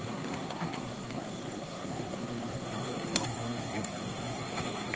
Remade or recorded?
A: remade